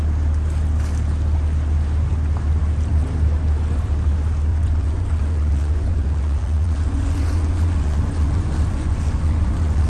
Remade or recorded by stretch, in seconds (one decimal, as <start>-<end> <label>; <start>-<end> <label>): 0.0-4.5 recorded; 4.5-9.9 remade